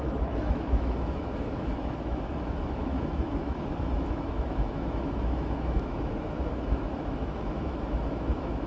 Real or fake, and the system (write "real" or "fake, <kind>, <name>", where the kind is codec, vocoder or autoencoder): fake, autoencoder, DAC-VAE